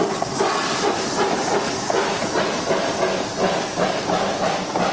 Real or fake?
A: real